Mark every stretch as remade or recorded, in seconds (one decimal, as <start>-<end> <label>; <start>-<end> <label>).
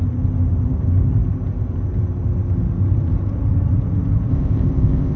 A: 0.0-4.3 recorded; 4.3-5.2 remade